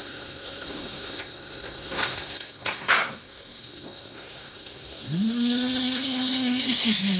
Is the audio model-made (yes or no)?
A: yes